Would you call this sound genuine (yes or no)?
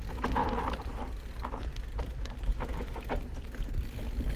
yes